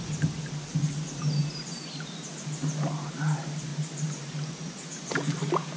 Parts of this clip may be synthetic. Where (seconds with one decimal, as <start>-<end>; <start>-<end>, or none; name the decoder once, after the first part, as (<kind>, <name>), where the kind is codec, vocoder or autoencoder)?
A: none